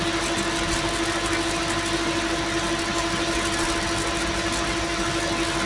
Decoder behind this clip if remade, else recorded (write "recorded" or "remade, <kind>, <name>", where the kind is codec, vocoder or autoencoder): recorded